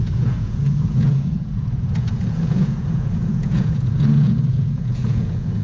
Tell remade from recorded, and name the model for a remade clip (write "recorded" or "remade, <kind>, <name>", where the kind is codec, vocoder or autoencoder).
remade, vocoder, Vocos